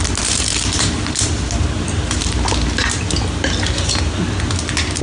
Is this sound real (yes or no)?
yes